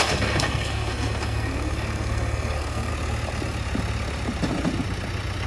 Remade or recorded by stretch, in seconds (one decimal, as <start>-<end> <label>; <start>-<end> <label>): 0.0-2.9 remade; 2.9-5.5 recorded